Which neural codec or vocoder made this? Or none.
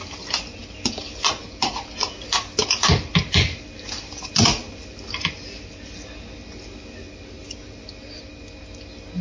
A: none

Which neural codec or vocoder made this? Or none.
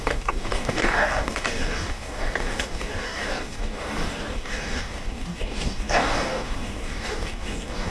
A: codec, DAC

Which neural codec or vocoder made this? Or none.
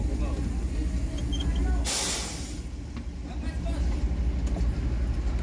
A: none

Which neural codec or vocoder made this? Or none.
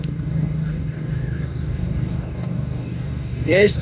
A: codec, DAC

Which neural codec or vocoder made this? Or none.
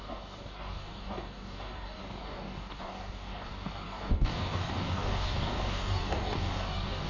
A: codec, DAC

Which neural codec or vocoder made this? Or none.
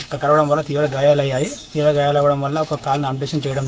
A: codec, DAC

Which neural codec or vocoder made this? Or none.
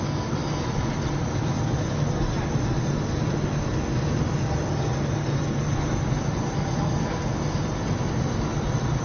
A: none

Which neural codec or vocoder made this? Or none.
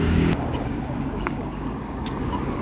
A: codec, DAC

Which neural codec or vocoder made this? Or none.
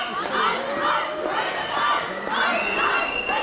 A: none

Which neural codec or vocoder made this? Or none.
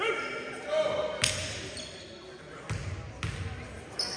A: none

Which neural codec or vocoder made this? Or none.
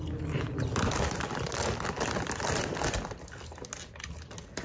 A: none